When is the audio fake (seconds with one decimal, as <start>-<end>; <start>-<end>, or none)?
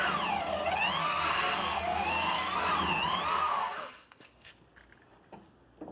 1.0-2.7; 3.3-4.5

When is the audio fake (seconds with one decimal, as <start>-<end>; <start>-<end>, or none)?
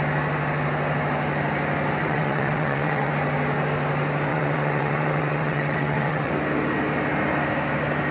2.0-3.1; 4.3-6.3